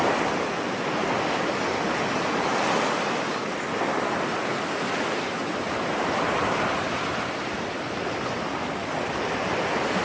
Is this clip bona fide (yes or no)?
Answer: yes